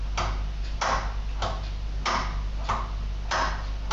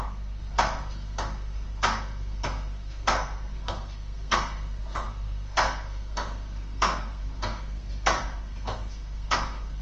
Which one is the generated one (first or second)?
second